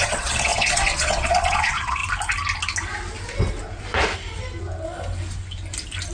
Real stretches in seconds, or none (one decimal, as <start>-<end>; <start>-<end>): 2.0-6.1